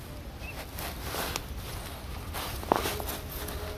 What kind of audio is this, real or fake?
real